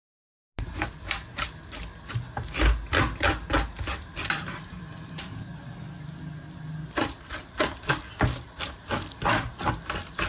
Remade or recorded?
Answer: recorded